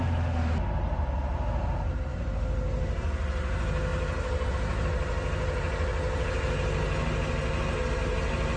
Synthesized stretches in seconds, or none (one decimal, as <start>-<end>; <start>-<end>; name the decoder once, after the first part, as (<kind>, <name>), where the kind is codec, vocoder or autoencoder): none